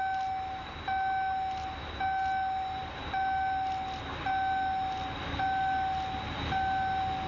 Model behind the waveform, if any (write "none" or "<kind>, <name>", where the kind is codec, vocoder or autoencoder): none